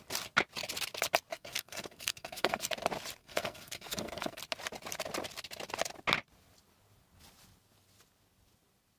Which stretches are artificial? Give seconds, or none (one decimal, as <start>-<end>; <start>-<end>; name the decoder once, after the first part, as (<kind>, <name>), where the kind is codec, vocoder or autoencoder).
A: 1.3-2.7 (codec, SNAC); 3.2-4.4